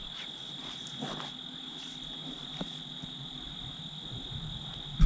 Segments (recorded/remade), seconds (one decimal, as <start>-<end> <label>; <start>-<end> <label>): 0.0-5.1 recorded